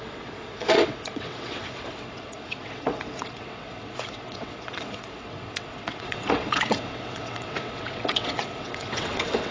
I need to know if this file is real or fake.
fake